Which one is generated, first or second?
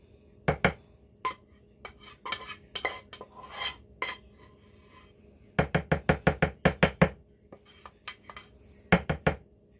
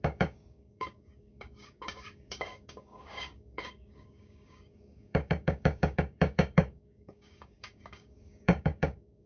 second